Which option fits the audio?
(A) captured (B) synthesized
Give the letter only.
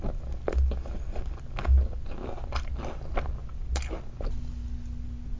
A